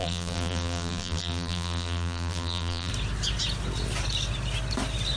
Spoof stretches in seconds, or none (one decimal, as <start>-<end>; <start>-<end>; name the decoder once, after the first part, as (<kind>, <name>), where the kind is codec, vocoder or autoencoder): 0.0-2.9 (vocoder, BigVGAN v2)